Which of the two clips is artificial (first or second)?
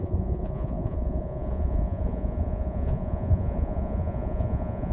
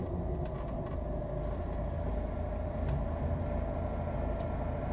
first